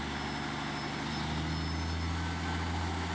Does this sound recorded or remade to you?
recorded